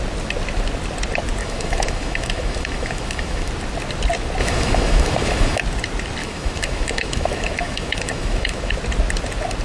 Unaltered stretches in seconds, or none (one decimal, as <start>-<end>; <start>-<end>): 0.0-1.4; 3.5-4.4; 5.6-6.2; 8.7-9.6